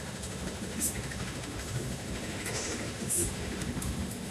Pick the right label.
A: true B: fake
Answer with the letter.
B